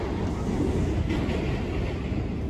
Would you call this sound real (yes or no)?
yes